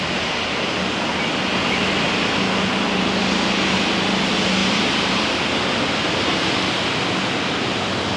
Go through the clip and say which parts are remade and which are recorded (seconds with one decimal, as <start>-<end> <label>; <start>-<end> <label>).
0.0-4.6 recorded; 4.6-5.2 remade; 5.2-8.2 recorded